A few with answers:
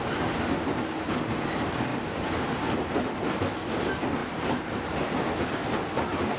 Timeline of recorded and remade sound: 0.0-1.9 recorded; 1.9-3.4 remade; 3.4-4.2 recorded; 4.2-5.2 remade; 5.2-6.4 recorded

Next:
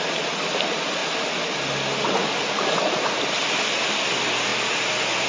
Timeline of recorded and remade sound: 0.0-5.3 recorded

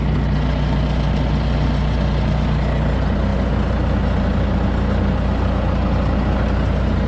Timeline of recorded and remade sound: 0.0-7.1 recorded

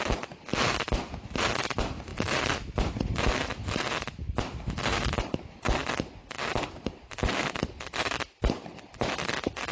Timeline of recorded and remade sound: 0.0-2.1 recorded; 2.1-2.9 remade; 2.9-9.7 recorded

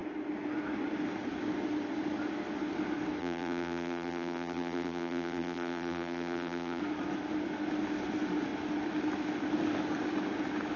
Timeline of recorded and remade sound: 0.0-3.2 recorded; 3.2-6.8 remade; 6.8-10.8 recorded

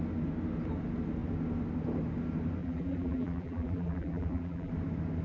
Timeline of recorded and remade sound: 0.0-2.6 recorded; 2.6-4.7 remade; 4.7-5.2 recorded